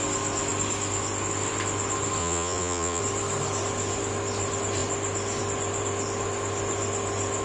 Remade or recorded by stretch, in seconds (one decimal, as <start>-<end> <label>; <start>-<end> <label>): 0.0-2.2 recorded; 2.2-3.0 remade; 3.0-7.4 recorded